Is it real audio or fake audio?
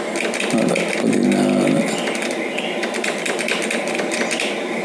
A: real